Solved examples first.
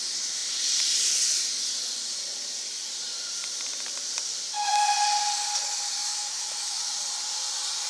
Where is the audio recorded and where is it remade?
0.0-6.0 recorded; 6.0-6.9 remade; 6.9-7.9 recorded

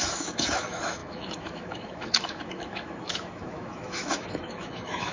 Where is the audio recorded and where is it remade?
0.0-5.1 remade

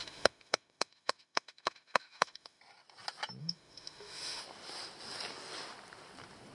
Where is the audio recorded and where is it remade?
0.0-2.6 remade; 2.6-3.4 recorded; 3.4-4.4 remade; 4.4-6.5 recorded